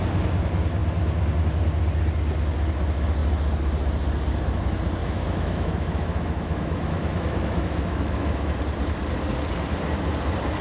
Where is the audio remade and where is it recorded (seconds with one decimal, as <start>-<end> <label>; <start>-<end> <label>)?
0.0-5.0 recorded; 5.0-8.6 remade; 8.6-10.6 recorded

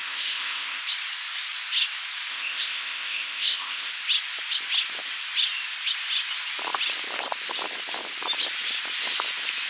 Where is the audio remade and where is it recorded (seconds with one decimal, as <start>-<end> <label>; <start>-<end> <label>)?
0.0-0.8 remade; 0.8-2.3 recorded; 2.3-3.9 remade; 3.9-9.7 recorded